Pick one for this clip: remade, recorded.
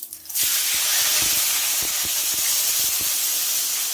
recorded